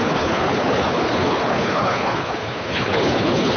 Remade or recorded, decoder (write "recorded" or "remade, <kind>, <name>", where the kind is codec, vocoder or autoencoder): remade, codec, HILCodec